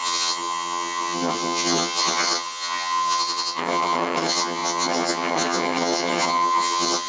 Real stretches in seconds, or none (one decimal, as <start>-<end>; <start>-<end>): none